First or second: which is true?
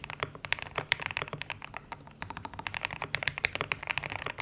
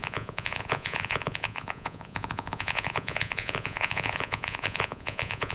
first